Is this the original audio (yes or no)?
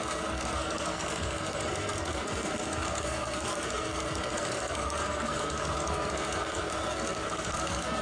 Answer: no